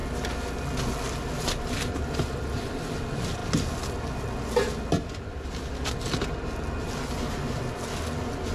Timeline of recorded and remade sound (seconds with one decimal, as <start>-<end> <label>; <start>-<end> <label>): 0.0-8.5 recorded